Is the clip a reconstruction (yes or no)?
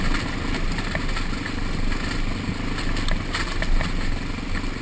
no